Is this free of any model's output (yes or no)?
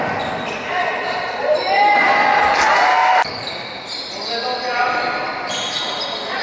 yes